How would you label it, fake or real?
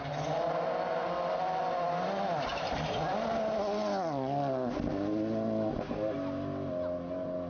real